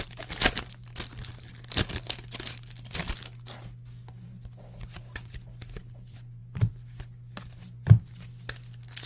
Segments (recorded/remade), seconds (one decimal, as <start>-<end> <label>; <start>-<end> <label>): 0.0-9.1 recorded